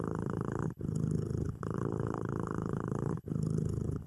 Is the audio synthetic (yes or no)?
yes